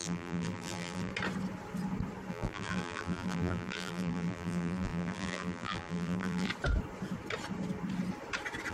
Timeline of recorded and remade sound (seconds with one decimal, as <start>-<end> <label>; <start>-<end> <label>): 0.0-1.1 remade; 1.1-2.3 recorded; 2.3-6.5 remade; 6.5-8.7 recorded